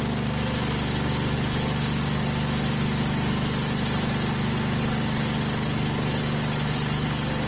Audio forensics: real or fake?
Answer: real